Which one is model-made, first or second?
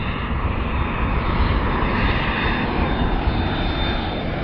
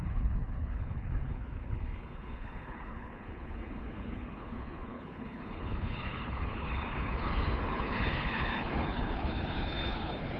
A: second